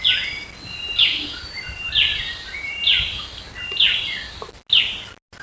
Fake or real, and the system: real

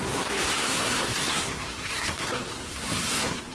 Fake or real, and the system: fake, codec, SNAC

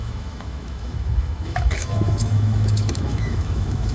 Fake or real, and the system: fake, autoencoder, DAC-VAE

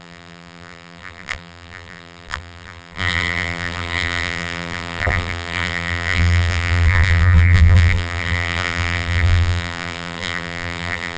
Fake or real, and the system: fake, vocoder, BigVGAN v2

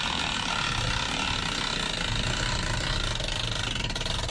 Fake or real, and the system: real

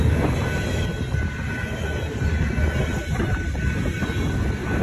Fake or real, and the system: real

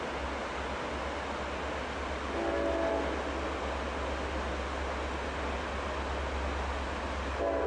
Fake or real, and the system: real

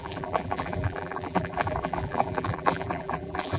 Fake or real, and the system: fake, vocoder, BigVGAN v2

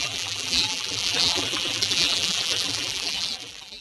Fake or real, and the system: fake, vocoder, BigVGAN v2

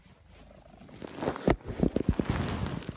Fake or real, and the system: real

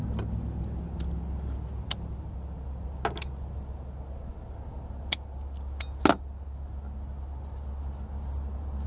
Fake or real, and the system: real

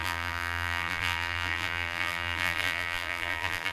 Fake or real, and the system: fake, vocoder, BigVGAN v2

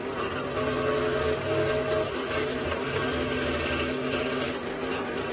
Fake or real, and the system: real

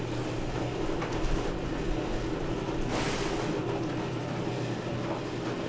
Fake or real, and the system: real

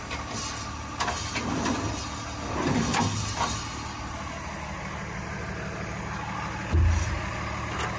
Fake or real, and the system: real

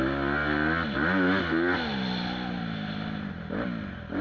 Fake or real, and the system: real